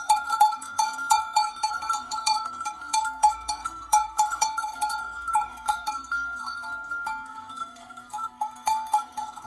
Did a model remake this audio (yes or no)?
yes